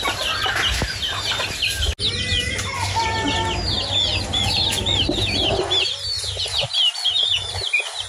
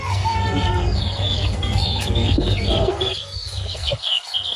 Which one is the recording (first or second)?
first